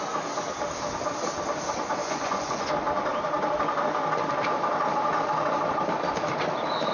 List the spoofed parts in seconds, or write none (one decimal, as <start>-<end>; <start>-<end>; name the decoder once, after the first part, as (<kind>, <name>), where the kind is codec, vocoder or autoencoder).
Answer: 2.0-2.7 (vocoder, Vocos)

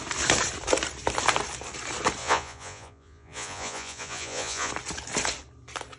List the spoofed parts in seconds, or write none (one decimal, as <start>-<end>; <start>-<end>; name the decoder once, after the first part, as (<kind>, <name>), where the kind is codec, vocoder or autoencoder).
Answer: 2.2-4.7 (vocoder, Vocos)

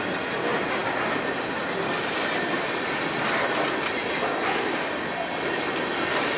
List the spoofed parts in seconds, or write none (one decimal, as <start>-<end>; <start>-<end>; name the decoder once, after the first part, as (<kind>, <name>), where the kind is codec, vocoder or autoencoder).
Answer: none